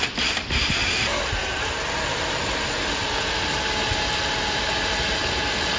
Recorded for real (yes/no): yes